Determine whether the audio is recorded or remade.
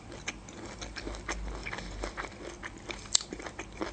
recorded